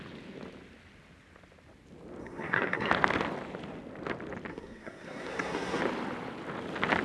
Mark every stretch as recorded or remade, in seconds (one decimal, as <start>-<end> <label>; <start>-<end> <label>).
0.0-2.2 recorded; 2.2-2.9 remade; 2.9-4.5 recorded; 4.5-5.8 remade; 5.8-7.0 recorded

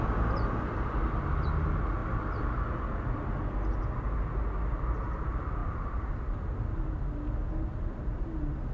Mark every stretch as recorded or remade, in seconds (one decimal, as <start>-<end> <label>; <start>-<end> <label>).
0.0-2.0 recorded; 2.0-2.8 remade; 2.8-5.6 recorded; 5.6-6.1 remade; 6.1-8.7 recorded